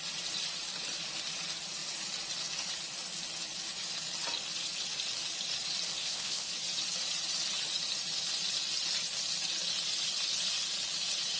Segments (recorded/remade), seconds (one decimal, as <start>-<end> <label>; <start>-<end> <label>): 0.0-6.0 recorded; 6.0-6.5 remade; 6.5-11.4 recorded